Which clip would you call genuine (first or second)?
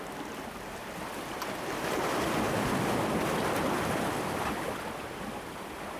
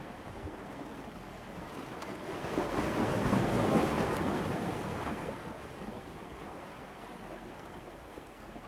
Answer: first